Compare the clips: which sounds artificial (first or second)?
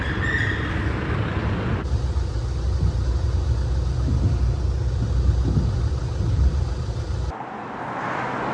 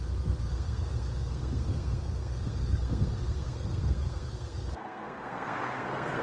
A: second